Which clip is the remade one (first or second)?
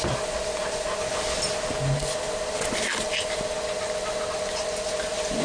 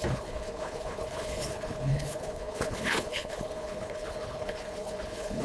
second